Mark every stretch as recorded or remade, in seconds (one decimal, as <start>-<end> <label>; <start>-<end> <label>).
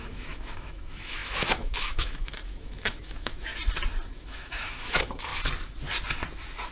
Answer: 0.0-3.5 remade; 3.5-4.1 recorded; 4.1-5.3 remade; 5.3-6.7 recorded